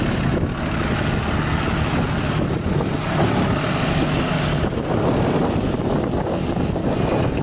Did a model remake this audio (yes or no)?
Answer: no